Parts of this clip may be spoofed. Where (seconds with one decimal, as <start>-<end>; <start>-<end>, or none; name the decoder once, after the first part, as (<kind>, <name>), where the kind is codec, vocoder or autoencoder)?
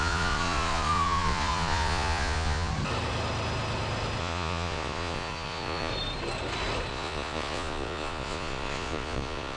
0.0-2.7 (vocoder, Vocos); 4.2-5.9; 6.9-9.6